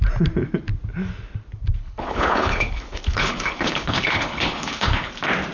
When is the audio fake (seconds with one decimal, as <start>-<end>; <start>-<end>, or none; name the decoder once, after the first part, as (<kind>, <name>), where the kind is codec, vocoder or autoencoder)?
1.8-5.1 (codec, HILCodec)